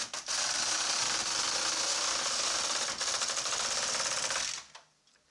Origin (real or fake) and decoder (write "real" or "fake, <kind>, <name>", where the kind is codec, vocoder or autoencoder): real